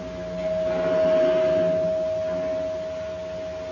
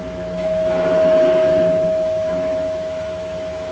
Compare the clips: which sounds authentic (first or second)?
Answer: first